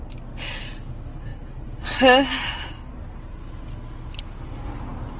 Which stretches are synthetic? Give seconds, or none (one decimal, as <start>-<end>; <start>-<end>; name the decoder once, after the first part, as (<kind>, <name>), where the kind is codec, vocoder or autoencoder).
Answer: none